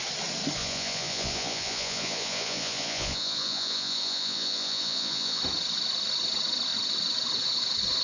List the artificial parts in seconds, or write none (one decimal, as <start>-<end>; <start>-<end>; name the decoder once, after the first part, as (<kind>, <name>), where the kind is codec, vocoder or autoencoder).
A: 0.6-5.4 (vocoder, Vocos)